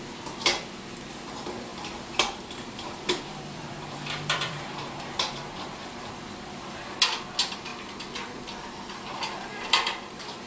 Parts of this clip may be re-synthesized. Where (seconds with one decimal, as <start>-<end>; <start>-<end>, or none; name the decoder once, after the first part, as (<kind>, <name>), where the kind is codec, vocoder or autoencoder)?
1.7-6.2 (vocoder, BigVGAN v2); 9.5-10.5